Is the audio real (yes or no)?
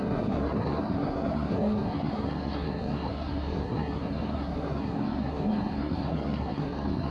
no